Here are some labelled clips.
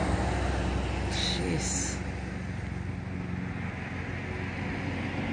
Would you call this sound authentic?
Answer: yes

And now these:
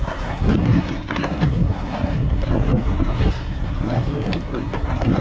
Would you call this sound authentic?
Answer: no